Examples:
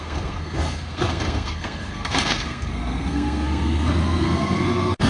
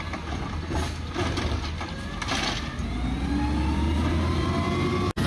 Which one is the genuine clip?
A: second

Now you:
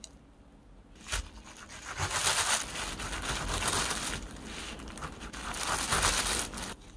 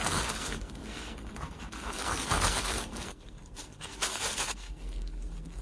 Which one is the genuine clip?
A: first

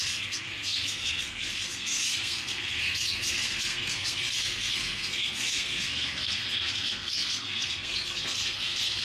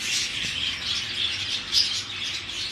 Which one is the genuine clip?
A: second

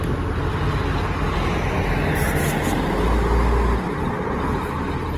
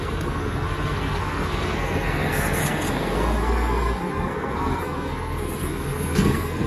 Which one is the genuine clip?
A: first